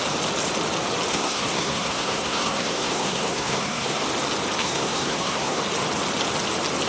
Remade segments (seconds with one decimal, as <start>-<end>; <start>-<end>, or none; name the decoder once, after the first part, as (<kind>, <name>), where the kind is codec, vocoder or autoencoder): 1.1-4.0 (codec, SNAC); 4.6-5.6